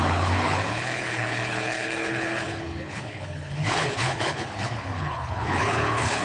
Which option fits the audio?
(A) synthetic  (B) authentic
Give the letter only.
A